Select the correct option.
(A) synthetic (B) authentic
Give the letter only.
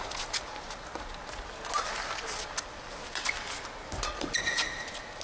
B